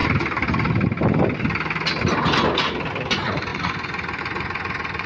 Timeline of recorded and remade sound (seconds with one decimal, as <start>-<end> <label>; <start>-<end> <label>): 0.0-3.1 recorded; 3.1-5.1 remade